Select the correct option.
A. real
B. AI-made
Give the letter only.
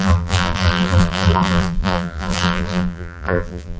B